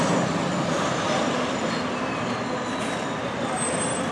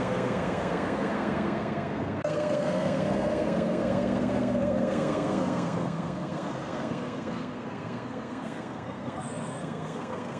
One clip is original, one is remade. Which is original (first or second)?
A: first